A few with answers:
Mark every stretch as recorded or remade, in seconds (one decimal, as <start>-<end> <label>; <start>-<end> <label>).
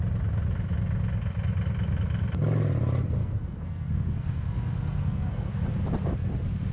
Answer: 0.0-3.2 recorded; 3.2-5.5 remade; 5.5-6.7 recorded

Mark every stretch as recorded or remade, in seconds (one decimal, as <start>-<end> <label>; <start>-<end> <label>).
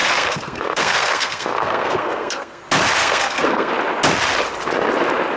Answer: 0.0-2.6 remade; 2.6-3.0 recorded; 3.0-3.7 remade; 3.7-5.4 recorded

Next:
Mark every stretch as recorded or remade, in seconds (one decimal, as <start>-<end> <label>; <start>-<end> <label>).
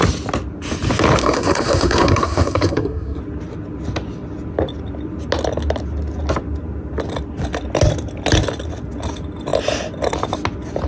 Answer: 0.0-1.2 recorded; 1.2-3.2 remade; 3.2-10.9 recorded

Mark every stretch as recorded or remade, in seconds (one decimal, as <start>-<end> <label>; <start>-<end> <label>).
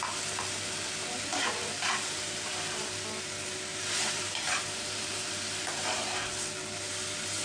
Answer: 0.0-1.3 recorded; 1.3-2.8 remade; 2.8-3.7 recorded; 3.7-6.3 remade; 6.3-7.4 recorded